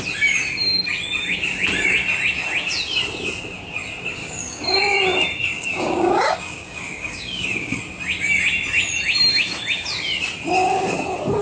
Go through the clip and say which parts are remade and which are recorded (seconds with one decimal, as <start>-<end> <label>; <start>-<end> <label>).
0.0-4.2 recorded; 4.2-4.8 remade; 4.8-5.4 recorded; 5.4-7.8 remade; 7.8-11.4 recorded